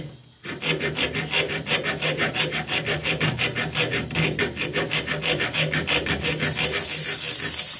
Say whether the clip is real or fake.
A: real